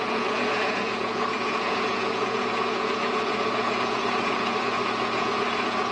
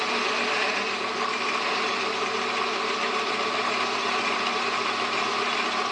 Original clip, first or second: second